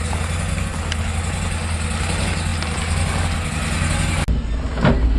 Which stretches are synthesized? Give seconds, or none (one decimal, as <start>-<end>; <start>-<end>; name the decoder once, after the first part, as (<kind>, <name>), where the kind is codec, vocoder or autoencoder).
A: none